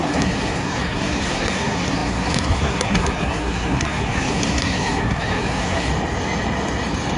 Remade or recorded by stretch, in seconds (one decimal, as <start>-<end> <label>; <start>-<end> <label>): 0.0-5.9 remade; 5.9-7.2 recorded